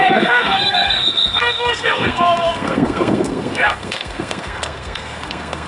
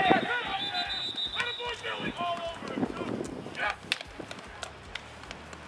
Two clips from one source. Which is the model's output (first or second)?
first